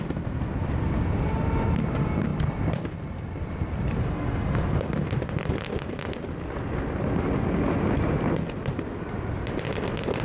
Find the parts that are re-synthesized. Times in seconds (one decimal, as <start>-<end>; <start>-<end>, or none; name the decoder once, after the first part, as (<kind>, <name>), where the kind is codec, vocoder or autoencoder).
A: 2.3-4.0 (vocoder, BigVGAN v2)